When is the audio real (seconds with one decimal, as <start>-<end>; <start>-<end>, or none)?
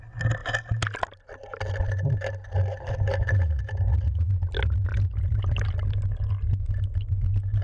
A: 0.0-4.9; 5.4-7.6